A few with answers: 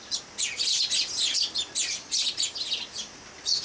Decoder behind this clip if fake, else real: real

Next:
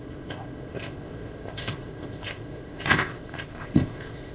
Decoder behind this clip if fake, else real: fake, codec, ZipCodec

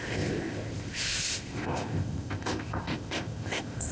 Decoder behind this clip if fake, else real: fake, codec, ZipCodec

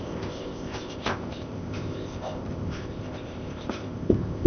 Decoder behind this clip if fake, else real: fake, codec, ZipCodec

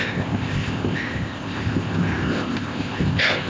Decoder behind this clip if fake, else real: fake, codec, ZipCodec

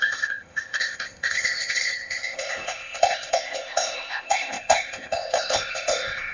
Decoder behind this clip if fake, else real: fake, codec, ZipCodec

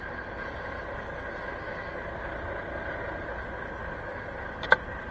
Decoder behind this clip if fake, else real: real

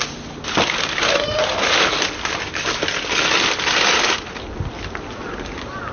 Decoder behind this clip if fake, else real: real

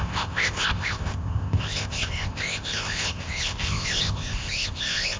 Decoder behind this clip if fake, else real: fake, codec, ZipCodec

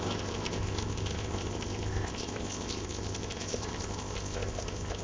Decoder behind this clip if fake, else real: fake, codec, ZipCodec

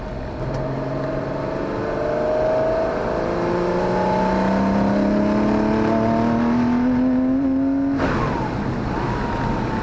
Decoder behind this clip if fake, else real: real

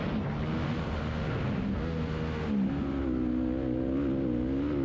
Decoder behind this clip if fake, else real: real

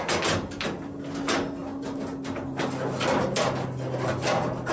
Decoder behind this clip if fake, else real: real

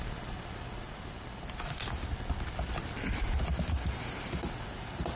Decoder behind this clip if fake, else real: real